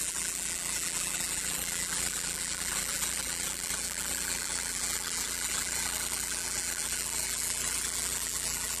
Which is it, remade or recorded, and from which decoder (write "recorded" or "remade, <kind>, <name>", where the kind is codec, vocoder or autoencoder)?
remade, vocoder, BigVGAN v2